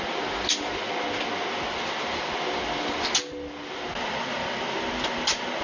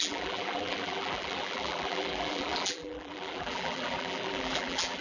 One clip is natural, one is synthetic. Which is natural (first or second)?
first